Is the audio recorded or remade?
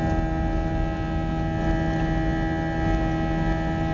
recorded